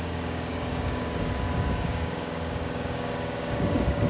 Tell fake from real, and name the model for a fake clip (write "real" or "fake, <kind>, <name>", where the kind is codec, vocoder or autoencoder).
fake, codec, DAC